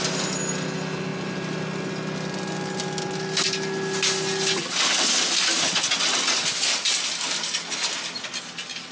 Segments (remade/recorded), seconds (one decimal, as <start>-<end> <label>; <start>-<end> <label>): 0.0-8.9 recorded